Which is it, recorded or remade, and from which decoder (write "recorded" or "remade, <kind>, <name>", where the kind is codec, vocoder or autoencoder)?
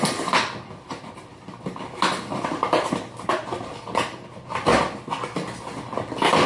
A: recorded